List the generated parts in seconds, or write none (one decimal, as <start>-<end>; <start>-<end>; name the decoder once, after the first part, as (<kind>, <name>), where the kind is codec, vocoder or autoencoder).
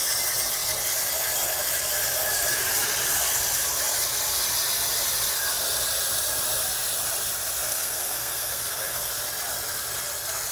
7.7-9.1 (codec, SNAC)